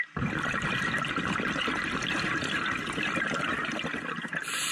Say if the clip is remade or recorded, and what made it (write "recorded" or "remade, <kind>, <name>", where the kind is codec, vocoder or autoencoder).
recorded